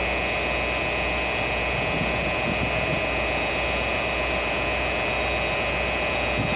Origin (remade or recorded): recorded